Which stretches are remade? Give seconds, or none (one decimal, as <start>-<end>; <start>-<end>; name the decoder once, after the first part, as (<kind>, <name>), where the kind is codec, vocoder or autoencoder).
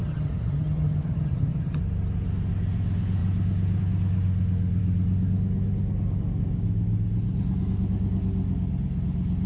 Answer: 0.0-1.8 (vocoder, HiFi-GAN)